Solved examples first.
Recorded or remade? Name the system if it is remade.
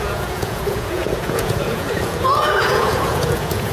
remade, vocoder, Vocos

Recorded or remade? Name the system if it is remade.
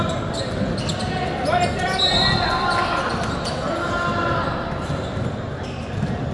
recorded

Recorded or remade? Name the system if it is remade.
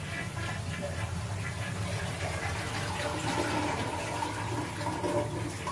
recorded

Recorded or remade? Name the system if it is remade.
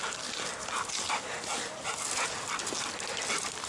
recorded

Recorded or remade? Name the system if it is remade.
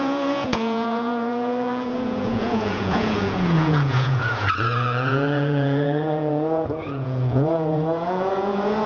remade, vocoder, Vocos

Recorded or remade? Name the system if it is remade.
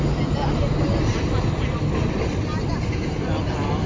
recorded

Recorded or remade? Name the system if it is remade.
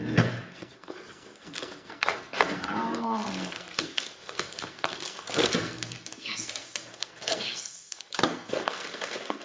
remade, codec, SNAC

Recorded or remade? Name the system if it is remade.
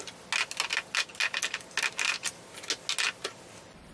recorded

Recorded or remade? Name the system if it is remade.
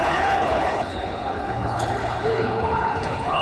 remade, codec, HILCodec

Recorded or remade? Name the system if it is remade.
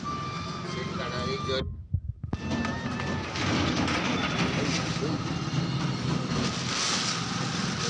recorded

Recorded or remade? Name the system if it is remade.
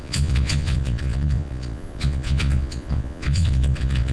remade, vocoder, Vocos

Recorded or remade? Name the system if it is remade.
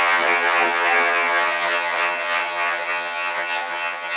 remade, vocoder, HiFi-GAN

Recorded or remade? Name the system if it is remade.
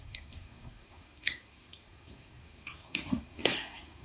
remade, codec, SNAC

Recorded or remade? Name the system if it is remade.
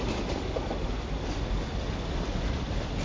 recorded